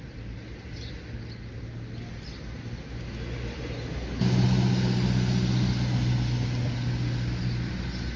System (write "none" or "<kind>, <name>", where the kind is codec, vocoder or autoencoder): none